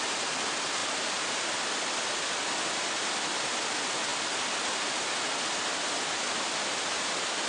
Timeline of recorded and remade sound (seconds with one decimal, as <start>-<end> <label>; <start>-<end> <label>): 0.0-7.5 recorded